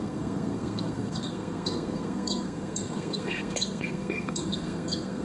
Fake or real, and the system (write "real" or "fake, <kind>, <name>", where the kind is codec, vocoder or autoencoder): fake, codec, SNAC